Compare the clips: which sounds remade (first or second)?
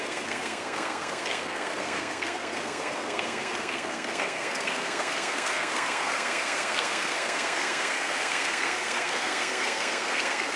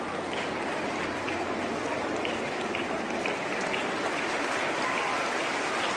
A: first